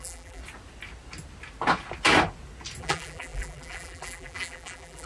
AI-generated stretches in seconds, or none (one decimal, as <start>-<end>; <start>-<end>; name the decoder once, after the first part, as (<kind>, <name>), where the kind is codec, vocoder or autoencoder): 0.0-0.4 (vocoder, BigVGAN v2); 2.8-5.1